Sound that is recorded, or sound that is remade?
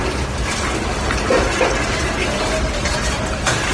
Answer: recorded